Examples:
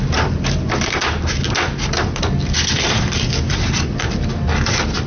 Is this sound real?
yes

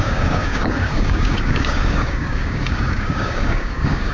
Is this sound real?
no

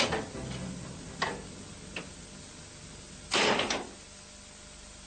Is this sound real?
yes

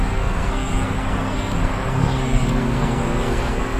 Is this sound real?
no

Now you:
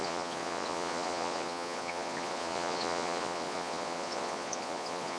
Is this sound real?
no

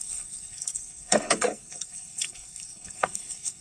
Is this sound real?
no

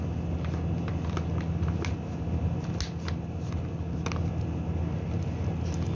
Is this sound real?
yes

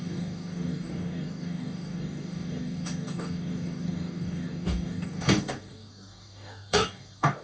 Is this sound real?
no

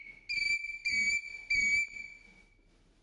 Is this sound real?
yes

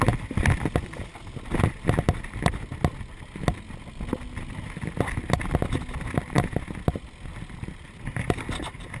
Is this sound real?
yes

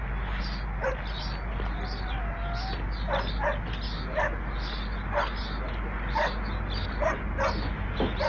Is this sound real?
yes